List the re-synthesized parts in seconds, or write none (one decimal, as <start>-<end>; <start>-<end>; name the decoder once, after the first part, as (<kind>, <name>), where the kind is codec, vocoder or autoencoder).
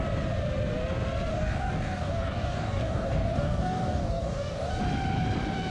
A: 1.3-4.7 (codec, DAC)